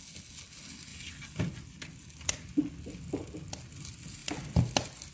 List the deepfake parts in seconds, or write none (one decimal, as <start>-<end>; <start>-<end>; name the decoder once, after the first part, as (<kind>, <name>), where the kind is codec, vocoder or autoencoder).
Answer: none